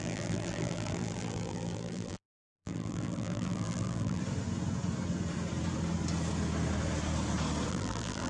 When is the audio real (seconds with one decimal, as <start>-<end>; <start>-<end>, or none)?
4.2-7.7

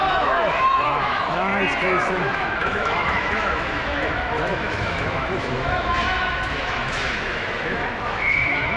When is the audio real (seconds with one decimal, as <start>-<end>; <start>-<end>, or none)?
1.5-2.1

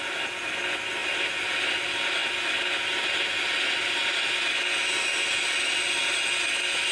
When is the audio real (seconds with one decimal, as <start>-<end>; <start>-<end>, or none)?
0.0-6.9

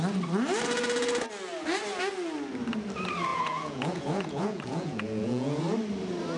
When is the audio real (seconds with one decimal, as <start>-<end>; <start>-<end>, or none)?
0.0-3.3; 5.6-6.4

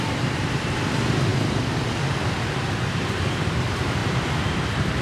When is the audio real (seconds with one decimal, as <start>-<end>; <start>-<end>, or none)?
4.0-4.5

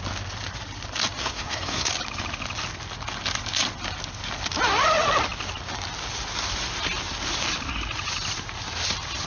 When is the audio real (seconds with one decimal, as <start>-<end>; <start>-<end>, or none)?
0.0-1.2; 1.9-9.3

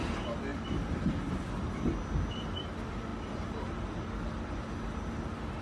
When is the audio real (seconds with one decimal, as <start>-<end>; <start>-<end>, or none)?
0.0-5.6